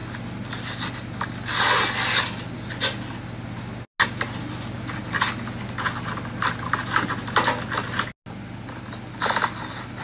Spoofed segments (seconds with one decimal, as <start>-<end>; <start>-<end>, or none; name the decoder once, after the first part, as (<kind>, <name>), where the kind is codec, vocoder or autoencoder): none